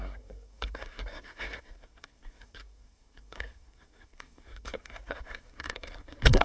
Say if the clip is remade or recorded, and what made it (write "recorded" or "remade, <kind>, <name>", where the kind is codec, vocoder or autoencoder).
remade, codec, SNAC